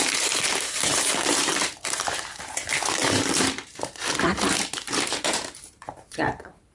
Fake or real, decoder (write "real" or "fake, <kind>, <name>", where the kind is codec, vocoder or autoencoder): fake, vocoder, BigVGAN v2